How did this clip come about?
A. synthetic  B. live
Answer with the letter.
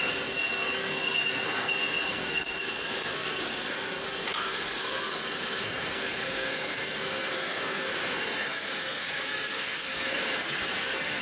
A